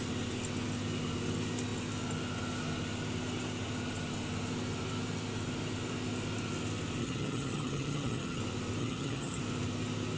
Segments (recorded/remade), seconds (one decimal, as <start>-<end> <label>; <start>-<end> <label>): 0.0-7.0 recorded; 7.0-8.4 remade; 8.4-8.8 recorded; 8.8-9.4 remade; 9.4-10.2 recorded